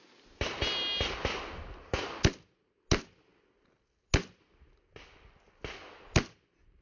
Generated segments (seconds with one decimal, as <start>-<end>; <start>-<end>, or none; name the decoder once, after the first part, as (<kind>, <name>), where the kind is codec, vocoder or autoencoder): none